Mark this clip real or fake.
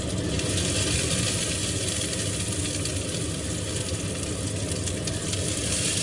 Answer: real